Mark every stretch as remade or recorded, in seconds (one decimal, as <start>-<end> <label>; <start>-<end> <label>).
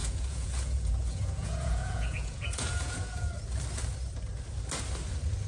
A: 0.0-3.3 remade; 3.3-5.5 recorded